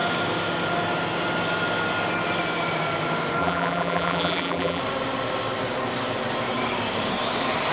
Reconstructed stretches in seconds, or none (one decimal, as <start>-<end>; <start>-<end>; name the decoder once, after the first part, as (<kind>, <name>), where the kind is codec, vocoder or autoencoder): 3.4-4.8 (vocoder, BigVGAN v2)